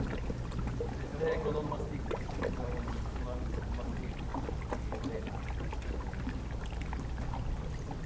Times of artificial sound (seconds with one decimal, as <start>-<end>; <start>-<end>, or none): 1.1-2.7